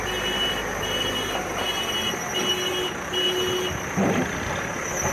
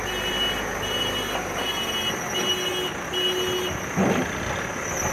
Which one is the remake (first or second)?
first